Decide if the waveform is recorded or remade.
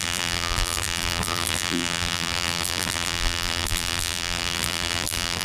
remade